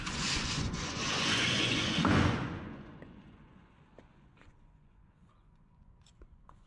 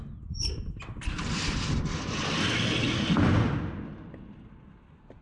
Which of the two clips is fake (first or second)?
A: first